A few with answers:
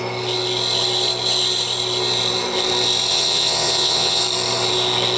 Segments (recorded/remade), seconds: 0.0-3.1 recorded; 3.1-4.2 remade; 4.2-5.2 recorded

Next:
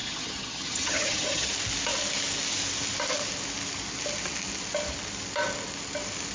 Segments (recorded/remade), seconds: 0.0-1.5 remade; 1.5-6.3 recorded

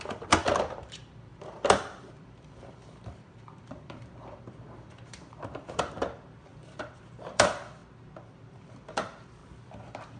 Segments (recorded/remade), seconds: 0.0-7.8 remade; 7.8-8.3 recorded; 8.3-10.2 remade

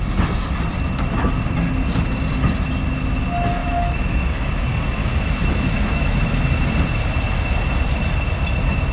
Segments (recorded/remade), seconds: 0.0-3.6 recorded; 3.6-4.5 remade; 4.5-5.0 recorded; 5.0-6.4 remade; 6.4-8.9 recorded

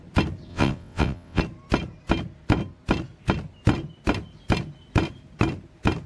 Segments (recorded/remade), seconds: 0.0-0.5 recorded; 0.5-1.4 remade; 1.4-6.1 recorded